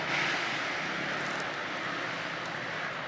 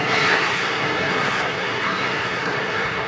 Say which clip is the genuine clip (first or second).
first